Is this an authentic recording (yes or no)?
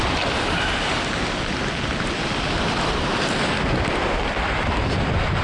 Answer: yes